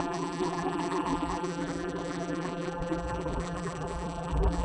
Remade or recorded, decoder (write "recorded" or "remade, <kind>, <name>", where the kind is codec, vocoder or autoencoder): remade, vocoder, BigVGAN v2